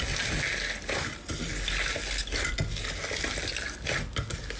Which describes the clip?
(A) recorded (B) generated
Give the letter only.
A